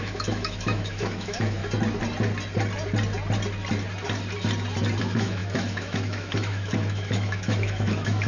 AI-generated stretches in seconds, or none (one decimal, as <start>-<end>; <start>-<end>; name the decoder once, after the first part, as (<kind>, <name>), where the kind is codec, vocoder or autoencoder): 0.0-1.6 (autoencoder, DAC-VAE); 5.0-8.3